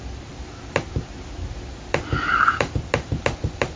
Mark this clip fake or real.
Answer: real